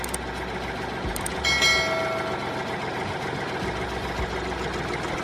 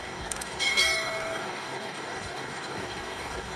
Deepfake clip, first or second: second